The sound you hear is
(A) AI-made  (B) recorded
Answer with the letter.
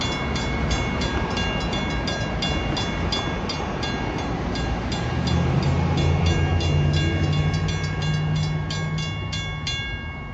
B